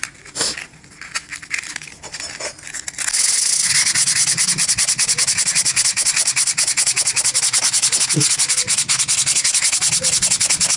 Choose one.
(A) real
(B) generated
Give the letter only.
A